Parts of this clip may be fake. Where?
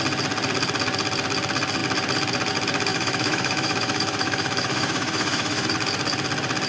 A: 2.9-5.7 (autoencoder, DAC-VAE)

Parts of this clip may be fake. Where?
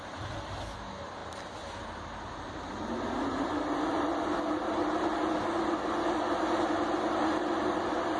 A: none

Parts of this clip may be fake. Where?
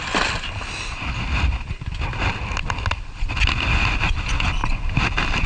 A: none